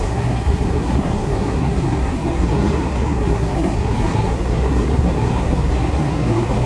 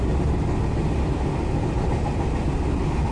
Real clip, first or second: second